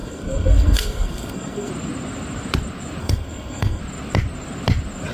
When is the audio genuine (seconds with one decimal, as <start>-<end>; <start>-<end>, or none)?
1.7-3.0; 3.8-5.1